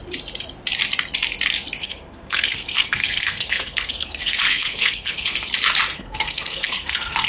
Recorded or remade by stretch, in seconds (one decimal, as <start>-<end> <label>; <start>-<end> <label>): 0.0-1.8 recorded; 1.8-5.5 remade; 5.5-5.9 recorded; 5.9-7.3 remade